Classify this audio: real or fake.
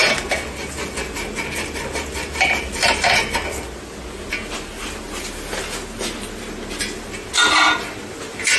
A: real